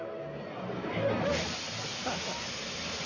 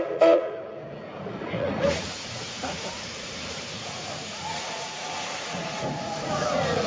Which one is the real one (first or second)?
first